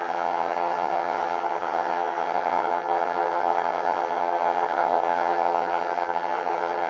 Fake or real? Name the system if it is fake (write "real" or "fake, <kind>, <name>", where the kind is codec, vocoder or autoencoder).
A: fake, vocoder, HiFi-GAN